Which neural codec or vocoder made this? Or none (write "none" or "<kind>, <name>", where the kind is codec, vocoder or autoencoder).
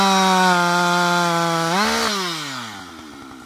none